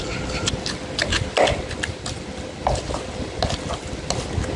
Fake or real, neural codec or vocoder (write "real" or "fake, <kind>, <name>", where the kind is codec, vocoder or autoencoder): real